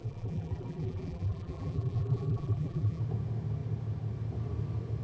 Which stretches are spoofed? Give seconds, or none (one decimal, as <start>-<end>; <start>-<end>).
0.0-3.0